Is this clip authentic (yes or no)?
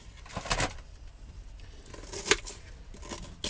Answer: yes